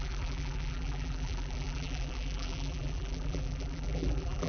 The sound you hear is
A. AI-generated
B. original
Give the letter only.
A